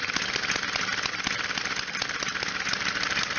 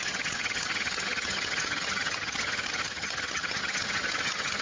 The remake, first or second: second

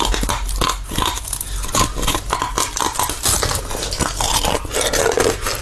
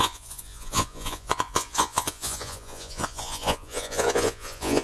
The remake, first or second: second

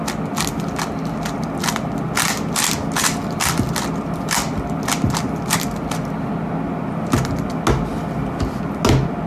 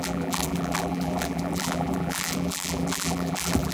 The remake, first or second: second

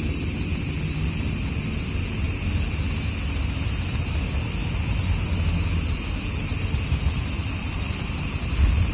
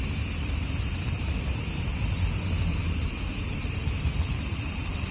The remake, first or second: second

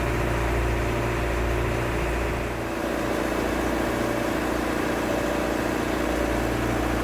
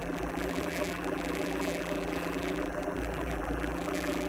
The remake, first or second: second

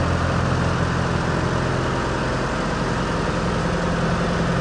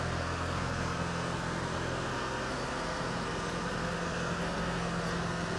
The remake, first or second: second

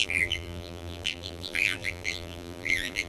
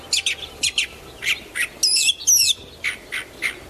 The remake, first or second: first